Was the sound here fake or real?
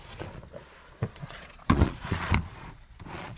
fake